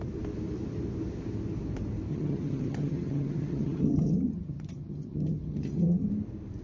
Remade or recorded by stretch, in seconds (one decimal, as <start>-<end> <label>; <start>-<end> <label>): 0.0-2.1 recorded; 2.1-6.1 remade; 6.1-6.6 recorded